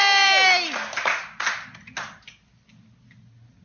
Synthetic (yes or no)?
no